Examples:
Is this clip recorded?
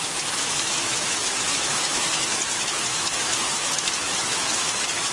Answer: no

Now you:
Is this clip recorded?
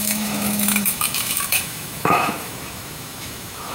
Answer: no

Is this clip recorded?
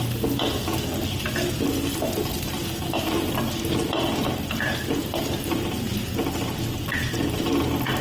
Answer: yes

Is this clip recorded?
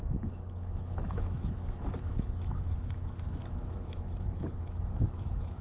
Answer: no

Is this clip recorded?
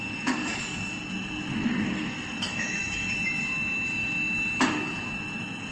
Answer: no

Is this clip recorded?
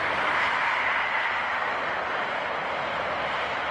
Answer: yes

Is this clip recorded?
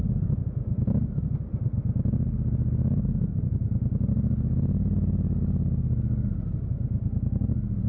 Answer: yes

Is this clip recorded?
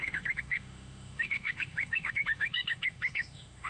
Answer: no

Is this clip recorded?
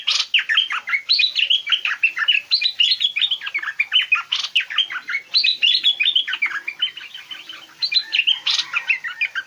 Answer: yes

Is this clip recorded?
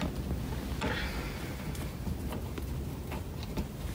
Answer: yes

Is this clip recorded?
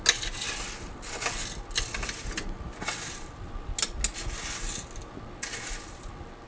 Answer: yes